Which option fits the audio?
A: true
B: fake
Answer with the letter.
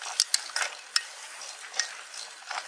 A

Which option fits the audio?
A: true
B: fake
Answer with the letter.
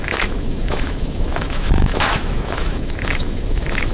B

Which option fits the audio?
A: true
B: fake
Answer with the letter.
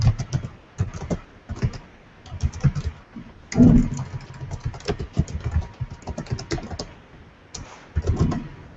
A